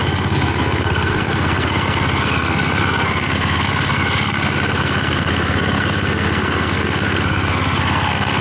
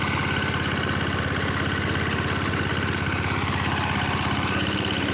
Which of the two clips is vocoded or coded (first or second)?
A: first